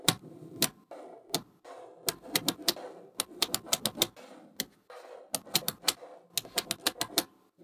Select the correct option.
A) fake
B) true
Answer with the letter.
B